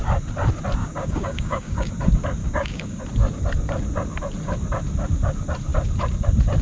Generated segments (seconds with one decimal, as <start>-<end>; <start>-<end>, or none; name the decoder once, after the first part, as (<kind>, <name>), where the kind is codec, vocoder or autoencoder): 0.8-1.9 (codec, DAC); 2.4-3.0